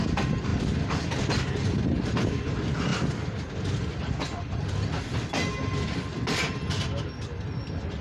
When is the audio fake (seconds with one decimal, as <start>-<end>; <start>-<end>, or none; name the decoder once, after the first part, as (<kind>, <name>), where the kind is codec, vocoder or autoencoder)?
none